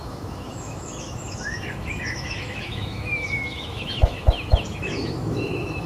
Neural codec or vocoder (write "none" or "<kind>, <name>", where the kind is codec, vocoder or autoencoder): autoencoder, DAC-VAE